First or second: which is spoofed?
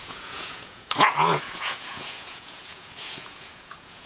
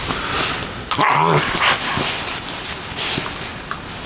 first